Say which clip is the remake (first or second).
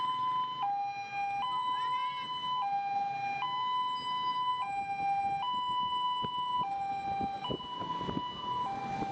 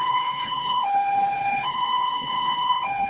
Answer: second